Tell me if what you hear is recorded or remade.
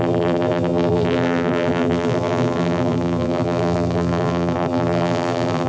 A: remade